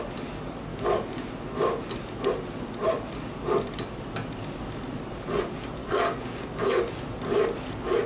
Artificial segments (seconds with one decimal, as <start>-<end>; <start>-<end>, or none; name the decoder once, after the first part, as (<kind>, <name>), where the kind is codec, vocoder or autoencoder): 0.7-1.3 (codec, DAC); 5.8-6.9